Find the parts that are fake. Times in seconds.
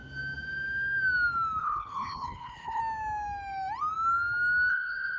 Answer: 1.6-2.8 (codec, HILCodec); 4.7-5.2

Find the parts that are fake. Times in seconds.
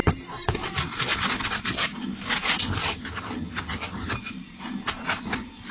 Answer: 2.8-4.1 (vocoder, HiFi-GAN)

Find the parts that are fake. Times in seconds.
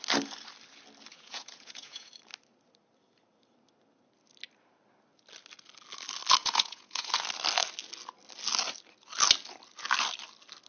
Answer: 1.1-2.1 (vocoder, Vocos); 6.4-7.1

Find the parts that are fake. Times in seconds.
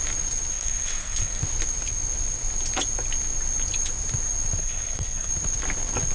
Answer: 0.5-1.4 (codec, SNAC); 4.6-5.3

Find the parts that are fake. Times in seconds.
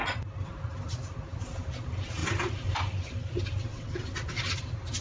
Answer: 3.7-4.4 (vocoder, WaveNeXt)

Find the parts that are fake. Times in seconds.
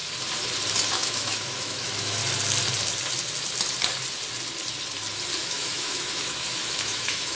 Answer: 0.9-2.2 (autoencoder, DAC-VAE); 5.4-7.4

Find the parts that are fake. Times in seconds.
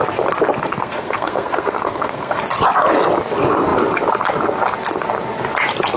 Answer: 0.6-2.4 (codec, SNAC)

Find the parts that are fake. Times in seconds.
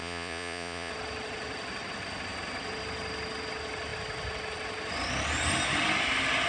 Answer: 0.0-0.9 (vocoder, Vocos)